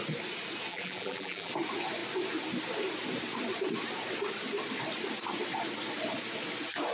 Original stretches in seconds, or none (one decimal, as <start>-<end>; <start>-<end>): 0.0-0.7; 1.5-6.9